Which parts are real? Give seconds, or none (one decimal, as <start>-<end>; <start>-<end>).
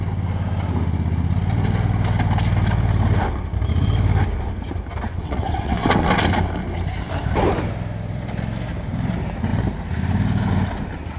0.0-5.1; 6.1-11.2